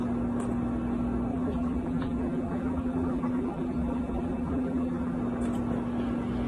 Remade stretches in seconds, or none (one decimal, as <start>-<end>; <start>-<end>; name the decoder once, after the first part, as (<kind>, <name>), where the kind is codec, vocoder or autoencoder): 1.3-5.2 (vocoder, BigVGAN v2)

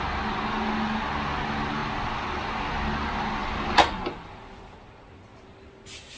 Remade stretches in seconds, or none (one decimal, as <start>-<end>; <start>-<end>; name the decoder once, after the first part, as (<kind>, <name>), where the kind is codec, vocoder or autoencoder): 3.4-6.2 (vocoder, BigVGAN v2)

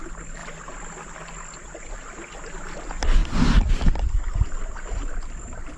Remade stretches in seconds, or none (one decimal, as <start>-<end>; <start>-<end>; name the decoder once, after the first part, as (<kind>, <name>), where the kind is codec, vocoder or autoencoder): none